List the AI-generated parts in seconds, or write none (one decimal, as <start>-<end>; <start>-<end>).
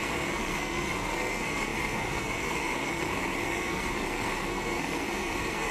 0.0-5.7